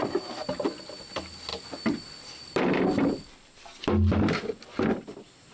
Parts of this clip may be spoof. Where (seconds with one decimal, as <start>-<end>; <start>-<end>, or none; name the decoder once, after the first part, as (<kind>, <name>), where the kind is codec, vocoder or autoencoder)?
none